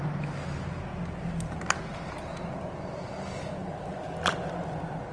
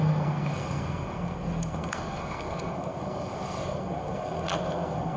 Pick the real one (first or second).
first